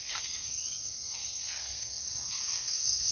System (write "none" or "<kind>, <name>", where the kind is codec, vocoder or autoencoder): codec, SNAC